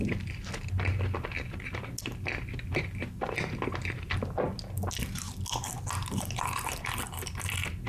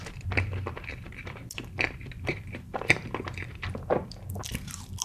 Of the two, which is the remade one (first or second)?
second